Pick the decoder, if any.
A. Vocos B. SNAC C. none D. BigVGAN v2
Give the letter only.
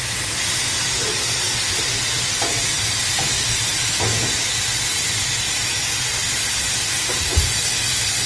C